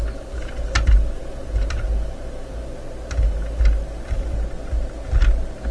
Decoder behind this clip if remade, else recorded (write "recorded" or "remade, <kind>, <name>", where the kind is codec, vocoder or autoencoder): recorded